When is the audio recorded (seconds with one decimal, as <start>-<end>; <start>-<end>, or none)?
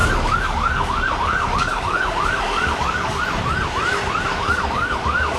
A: 3.2-4.3